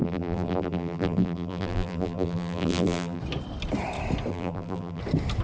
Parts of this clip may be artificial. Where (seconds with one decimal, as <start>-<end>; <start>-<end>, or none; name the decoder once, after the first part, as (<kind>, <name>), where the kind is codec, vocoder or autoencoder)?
0.0-3.2 (vocoder, BigVGAN v2); 4.3-5.0